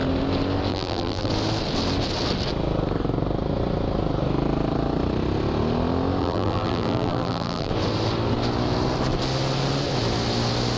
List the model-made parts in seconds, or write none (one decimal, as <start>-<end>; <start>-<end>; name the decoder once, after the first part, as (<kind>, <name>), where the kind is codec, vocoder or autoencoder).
0.7-1.3 (vocoder, BigVGAN v2); 6.2-7.7